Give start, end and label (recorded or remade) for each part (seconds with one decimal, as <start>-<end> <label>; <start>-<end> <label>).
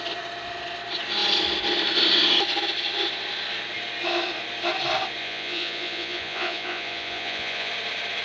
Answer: 0.0-5.2 recorded; 5.2-7.7 remade; 7.7-8.2 recorded